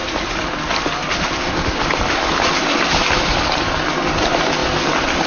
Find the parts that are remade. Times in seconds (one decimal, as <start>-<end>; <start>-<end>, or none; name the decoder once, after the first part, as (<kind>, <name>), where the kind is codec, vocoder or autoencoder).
none